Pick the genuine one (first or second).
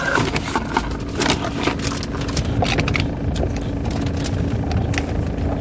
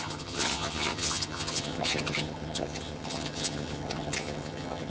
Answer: first